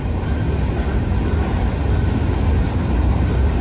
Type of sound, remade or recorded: recorded